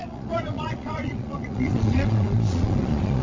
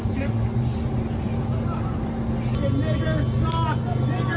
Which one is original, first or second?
second